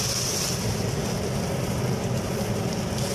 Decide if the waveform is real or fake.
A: real